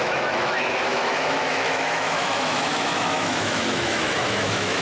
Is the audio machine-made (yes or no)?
yes